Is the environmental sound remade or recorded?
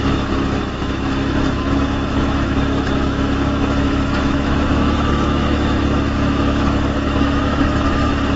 remade